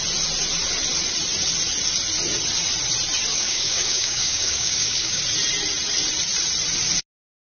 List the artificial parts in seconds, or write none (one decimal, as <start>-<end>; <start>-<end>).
3.3-5.2